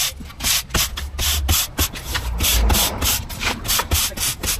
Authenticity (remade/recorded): recorded